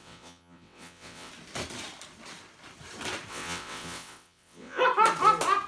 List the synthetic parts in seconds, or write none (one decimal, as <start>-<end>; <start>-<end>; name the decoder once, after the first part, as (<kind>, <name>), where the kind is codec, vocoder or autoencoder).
0.0-1.3 (vocoder, WaveNeXt); 3.3-4.8